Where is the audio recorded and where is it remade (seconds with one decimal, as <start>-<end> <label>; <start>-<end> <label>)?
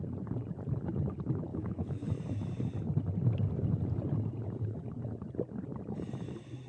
0.0-1.5 recorded; 1.5-2.1 remade; 2.1-6.7 recorded